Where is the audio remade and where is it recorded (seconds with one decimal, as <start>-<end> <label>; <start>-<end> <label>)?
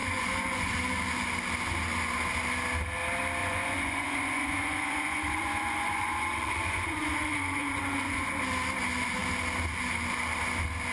0.0-0.7 remade; 0.7-3.4 recorded; 3.4-8.4 remade; 8.4-10.9 recorded